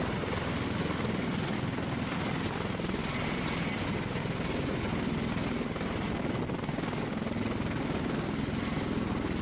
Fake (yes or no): no